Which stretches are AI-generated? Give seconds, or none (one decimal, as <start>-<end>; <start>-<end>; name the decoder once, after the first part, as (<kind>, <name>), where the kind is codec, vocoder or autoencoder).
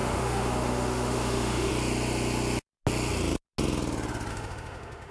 0.0-1.7 (autoencoder, DAC-VAE); 4.3-5.1